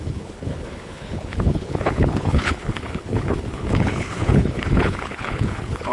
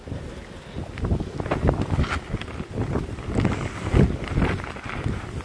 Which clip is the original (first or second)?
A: second